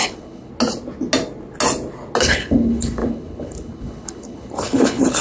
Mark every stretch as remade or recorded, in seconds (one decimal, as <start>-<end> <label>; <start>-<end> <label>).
0.0-0.5 remade; 0.5-2.2 recorded; 2.2-5.2 remade